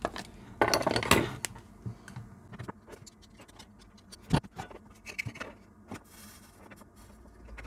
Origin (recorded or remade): recorded